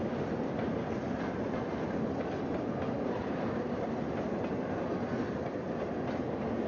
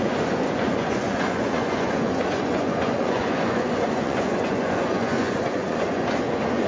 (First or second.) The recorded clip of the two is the first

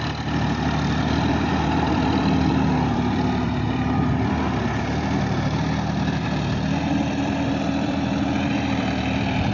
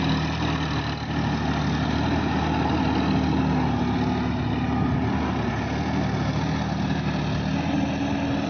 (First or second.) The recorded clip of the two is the second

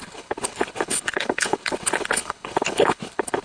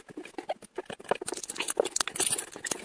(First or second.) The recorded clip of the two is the second